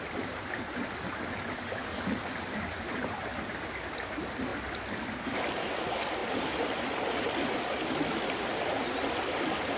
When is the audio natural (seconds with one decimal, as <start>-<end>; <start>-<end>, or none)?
0.0-9.8